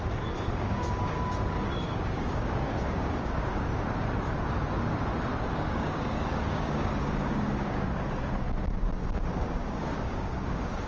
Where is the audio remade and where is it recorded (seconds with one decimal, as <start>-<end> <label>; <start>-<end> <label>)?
0.0-3.7 remade; 3.7-5.5 recorded; 5.5-10.9 remade